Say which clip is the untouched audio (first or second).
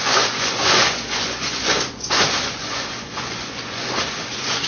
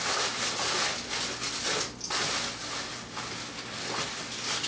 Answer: second